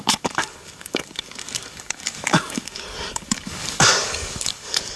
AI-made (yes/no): yes